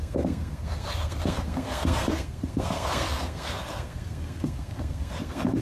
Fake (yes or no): yes